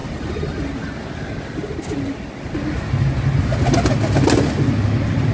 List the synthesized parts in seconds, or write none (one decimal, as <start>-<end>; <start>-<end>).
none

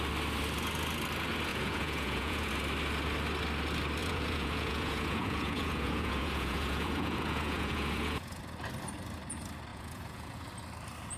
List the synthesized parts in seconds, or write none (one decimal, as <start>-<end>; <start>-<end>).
1.5-2.5; 4.0-8.4; 9.7-10.5

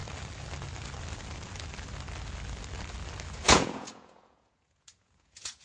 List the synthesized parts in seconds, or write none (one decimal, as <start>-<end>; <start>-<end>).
3.3-5.6

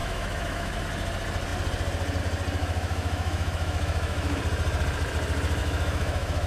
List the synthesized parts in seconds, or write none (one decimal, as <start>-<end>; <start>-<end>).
0.0-0.8; 2.6-4.4; 5.6-6.5

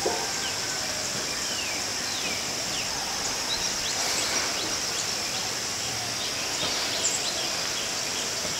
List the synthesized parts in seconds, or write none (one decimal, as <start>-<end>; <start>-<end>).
none

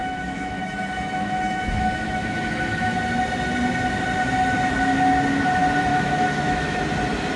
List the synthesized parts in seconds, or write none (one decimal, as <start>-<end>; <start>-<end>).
0.0-3.0; 5.9-6.8

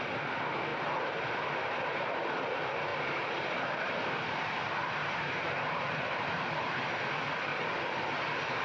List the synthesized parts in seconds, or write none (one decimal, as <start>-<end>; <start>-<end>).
2.9-6.8; 7.5-8.2

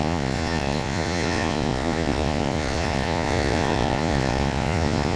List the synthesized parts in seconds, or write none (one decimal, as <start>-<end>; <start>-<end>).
0.0-5.2